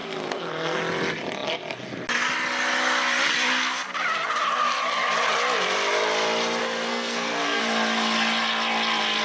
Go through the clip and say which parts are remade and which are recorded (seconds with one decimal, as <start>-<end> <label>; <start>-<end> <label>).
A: 0.0-0.8 remade; 0.8-6.6 recorded; 6.6-7.6 remade; 7.6-9.2 recorded